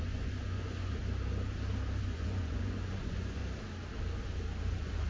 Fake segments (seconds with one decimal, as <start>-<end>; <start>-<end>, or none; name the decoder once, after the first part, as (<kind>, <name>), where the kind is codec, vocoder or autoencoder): 0.0-1.0 (vocoder, Vocos); 2.0-3.4; 4.6-5.1